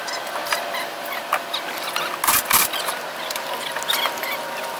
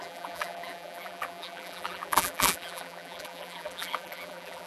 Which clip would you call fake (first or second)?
second